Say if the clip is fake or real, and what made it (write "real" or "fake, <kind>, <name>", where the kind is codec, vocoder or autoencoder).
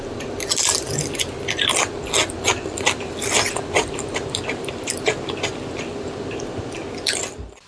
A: real